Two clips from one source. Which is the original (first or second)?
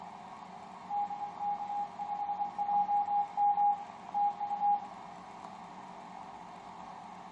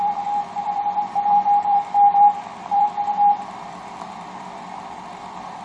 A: first